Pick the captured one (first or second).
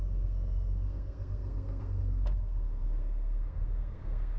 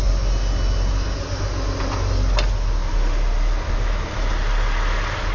second